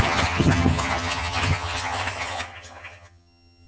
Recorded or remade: remade